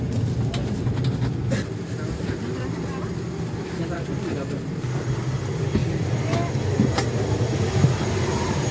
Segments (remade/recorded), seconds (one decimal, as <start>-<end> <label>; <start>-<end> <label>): 0.0-8.7 recorded